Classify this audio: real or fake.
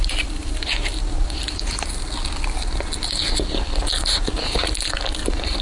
real